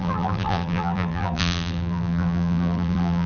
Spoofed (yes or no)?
yes